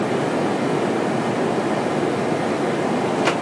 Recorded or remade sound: recorded